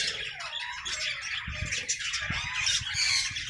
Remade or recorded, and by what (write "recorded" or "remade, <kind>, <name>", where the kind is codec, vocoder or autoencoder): recorded